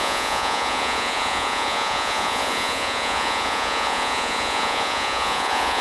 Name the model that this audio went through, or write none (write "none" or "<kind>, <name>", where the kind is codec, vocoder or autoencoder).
vocoder, Vocos